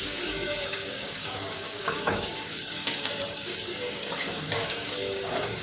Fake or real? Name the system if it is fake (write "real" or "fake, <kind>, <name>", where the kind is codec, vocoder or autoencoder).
fake, codec, DAC